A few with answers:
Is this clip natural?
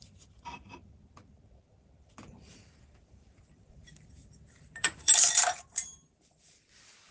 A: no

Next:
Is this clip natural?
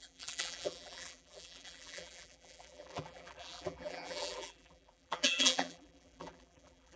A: no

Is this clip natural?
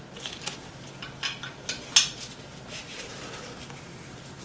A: yes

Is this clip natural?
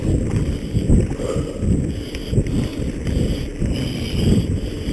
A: no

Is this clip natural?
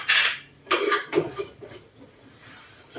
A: yes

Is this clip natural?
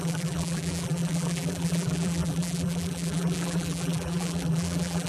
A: no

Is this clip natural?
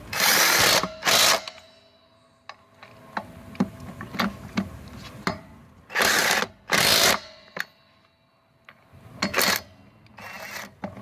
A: yes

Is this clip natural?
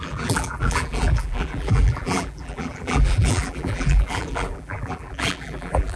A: no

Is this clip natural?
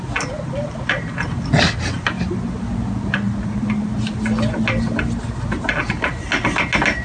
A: yes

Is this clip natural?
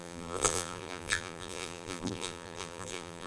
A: no